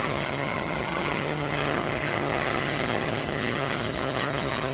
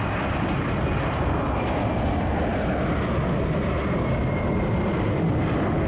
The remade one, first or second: first